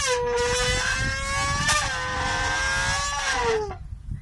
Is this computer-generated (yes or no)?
no